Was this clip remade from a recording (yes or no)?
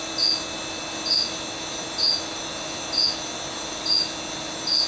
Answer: no